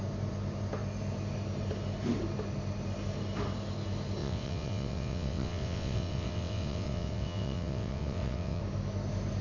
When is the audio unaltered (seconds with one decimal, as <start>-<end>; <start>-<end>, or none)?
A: 0.0-4.2; 8.6-9.4